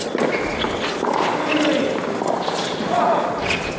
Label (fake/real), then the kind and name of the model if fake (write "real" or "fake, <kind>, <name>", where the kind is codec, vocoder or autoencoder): real